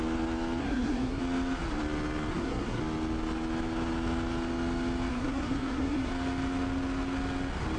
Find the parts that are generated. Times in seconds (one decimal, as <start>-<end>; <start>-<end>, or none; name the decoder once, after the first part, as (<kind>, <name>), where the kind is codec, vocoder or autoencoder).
0.6-1.2 (codec, SNAC); 2.3-2.8; 5.1-6.1